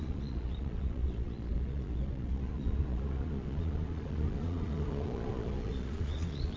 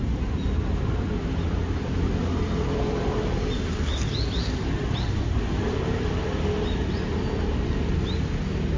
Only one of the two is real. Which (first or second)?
second